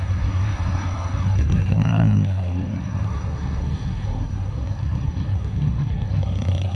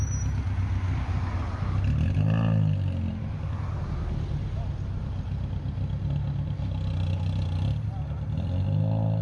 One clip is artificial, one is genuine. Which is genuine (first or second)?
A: second